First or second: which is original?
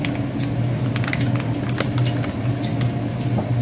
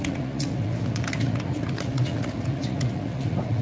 first